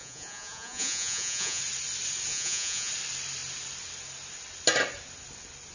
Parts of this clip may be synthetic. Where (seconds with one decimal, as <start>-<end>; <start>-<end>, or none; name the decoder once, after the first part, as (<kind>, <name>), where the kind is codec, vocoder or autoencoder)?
0.0-1.6 (vocoder, Vocos); 2.3-2.9